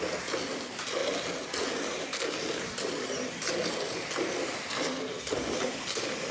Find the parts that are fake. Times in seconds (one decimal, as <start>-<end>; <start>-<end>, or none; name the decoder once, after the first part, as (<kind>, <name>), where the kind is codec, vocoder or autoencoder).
none